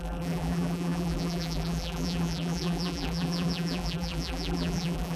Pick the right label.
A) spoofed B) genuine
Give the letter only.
A